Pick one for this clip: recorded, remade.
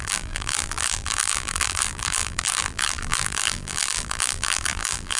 remade